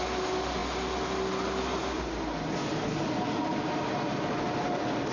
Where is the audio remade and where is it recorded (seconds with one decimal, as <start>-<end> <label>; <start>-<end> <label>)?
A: 0.0-5.1 recorded